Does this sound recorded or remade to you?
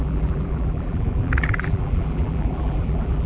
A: remade